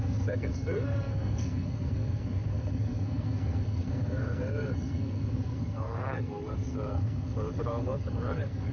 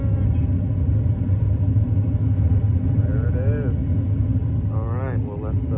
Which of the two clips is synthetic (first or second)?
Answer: first